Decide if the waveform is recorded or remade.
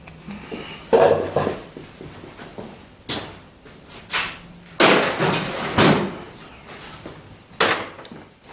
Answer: recorded